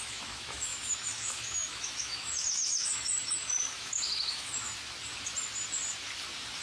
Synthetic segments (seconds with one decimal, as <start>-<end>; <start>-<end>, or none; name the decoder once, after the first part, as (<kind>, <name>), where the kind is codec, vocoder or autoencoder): 0.0-4.7 (autoencoder, DAC-VAE)